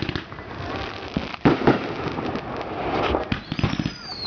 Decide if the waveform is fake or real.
real